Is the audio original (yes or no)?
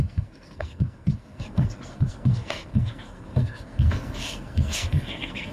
no